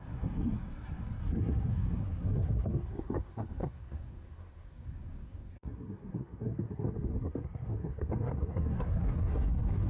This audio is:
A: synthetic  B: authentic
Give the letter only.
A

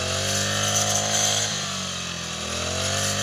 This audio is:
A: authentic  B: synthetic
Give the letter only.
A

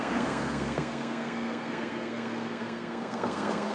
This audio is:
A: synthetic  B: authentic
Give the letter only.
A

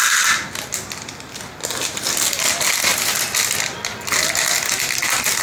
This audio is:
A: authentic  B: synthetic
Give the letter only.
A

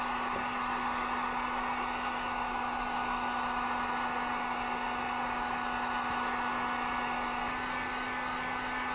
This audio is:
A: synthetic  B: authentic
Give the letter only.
B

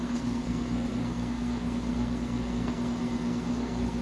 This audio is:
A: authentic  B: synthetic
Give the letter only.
B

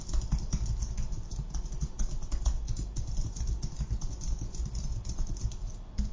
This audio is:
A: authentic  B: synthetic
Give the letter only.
A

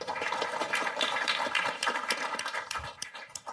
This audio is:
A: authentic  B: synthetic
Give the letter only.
B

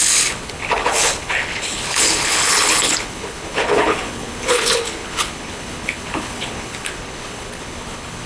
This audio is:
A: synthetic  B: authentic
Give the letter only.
A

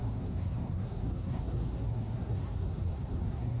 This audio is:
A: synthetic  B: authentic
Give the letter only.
A